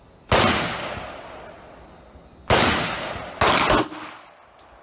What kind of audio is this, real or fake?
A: real